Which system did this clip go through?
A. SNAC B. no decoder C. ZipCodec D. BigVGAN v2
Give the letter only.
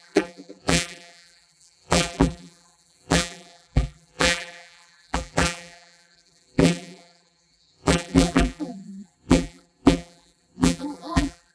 D